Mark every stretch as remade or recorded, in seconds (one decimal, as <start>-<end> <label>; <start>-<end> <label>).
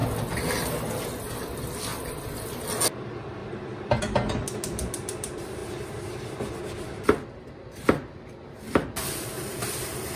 0.0-1.9 recorded; 1.9-2.5 remade; 2.5-10.2 recorded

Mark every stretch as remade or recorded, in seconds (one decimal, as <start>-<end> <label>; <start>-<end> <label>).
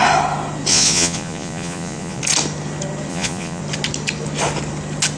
0.0-0.7 recorded; 0.7-2.2 remade; 2.2-3.1 recorded; 3.1-3.6 remade; 3.6-5.2 recorded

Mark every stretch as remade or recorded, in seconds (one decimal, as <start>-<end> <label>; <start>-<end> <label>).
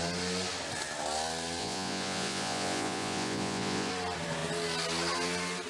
0.0-1.6 recorded; 1.6-3.9 remade; 3.9-5.7 recorded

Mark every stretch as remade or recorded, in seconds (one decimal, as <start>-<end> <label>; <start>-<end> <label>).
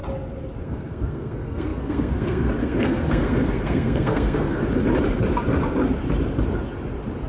0.0-0.6 recorded; 0.6-4.6 remade; 4.6-7.3 recorded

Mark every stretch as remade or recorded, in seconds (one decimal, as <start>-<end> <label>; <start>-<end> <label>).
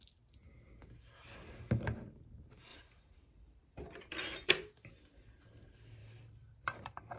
0.0-2.7 recorded; 2.7-4.5 remade; 4.5-6.0 recorded; 6.0-7.2 remade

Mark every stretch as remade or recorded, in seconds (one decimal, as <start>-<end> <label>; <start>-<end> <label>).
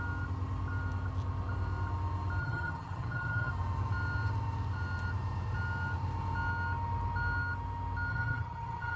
0.0-2.4 recorded; 2.4-3.5 remade; 3.5-8.1 recorded; 8.1-9.0 remade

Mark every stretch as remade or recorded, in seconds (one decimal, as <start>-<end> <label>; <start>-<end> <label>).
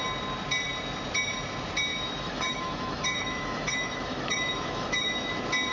0.0-1.9 recorded; 1.9-5.3 remade; 5.3-5.7 recorded